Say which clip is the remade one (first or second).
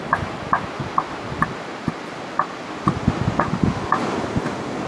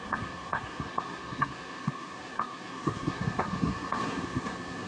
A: second